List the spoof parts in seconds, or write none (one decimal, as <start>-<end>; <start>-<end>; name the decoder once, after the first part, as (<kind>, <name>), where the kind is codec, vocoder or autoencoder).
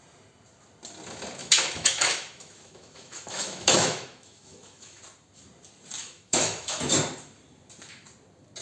1.4-5.0 (autoencoder, DAC-VAE); 6.0-6.9